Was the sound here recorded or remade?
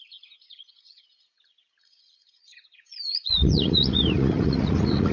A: remade